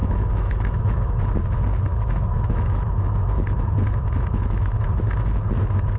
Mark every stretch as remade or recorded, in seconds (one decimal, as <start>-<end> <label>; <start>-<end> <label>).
0.0-1.2 remade; 1.2-1.9 recorded; 1.9-5.0 remade; 5.0-6.0 recorded

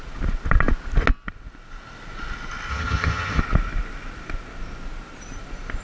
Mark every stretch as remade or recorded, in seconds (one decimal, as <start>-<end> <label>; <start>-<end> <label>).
0.0-2.7 recorded; 2.7-3.4 remade; 3.4-5.8 recorded

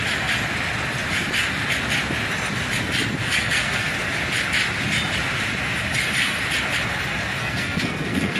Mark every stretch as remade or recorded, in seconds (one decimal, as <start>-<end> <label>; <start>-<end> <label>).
0.0-3.2 recorded; 3.2-3.9 remade; 3.9-7.4 recorded; 7.4-8.4 remade

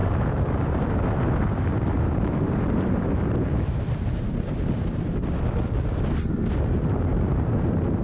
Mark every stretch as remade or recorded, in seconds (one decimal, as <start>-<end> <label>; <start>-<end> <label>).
0.0-4.8 remade; 4.8-7.1 recorded; 7.1-8.0 remade

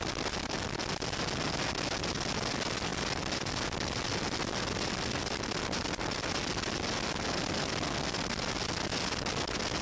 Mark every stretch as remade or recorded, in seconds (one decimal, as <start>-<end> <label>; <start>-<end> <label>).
0.0-9.8 recorded

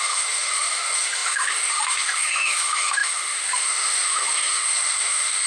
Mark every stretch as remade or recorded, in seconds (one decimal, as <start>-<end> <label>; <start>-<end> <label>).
0.0-5.5 remade